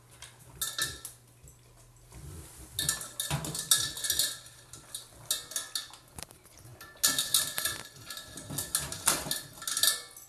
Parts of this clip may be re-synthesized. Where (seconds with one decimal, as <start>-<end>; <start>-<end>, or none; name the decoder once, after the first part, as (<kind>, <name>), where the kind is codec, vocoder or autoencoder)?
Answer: none